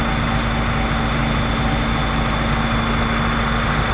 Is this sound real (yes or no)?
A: yes